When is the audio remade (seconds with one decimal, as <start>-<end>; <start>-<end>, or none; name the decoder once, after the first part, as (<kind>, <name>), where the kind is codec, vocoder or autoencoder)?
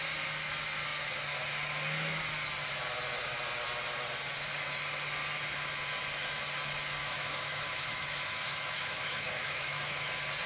7.0-10.1 (autoencoder, DAC-VAE)